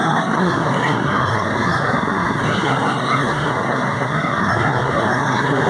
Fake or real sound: fake